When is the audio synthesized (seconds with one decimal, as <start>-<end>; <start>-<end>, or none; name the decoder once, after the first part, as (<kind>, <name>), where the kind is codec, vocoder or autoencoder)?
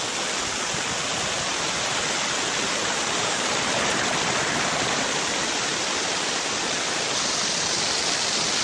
1.5-6.6 (vocoder, BigVGAN v2)